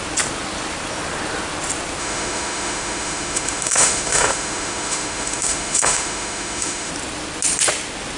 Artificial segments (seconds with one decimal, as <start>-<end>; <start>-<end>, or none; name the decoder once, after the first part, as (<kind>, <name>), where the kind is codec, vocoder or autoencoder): 2.0-6.9 (autoencoder, DAC-VAE)